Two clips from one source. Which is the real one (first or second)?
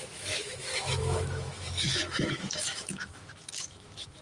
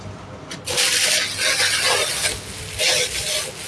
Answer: second